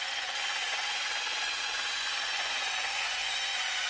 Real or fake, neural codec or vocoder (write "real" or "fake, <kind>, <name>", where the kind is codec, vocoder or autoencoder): fake, vocoder, Vocos